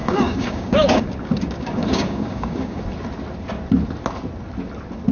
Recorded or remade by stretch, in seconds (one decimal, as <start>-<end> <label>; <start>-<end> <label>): 0.0-2.8 remade; 2.8-5.1 recorded